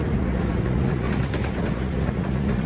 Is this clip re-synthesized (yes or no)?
yes